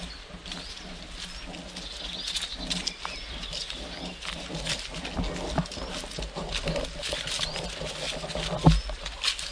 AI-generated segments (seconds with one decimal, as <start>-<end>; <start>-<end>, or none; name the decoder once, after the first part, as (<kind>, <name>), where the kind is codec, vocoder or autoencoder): none